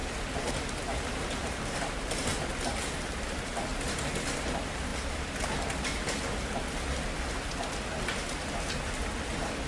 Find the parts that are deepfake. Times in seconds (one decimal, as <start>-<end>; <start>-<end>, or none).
0.8-2.3; 3.2-3.7; 4.4-4.9